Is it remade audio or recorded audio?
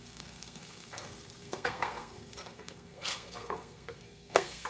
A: remade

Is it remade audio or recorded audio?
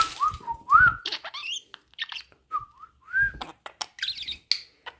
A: recorded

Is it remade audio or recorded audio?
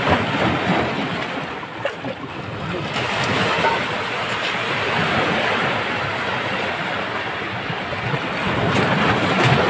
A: recorded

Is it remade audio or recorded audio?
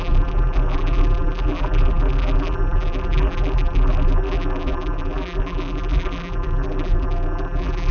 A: remade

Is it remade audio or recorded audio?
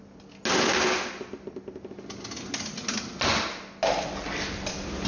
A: recorded